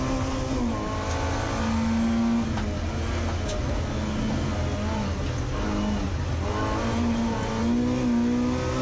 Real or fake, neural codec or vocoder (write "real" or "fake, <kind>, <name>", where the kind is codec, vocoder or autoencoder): real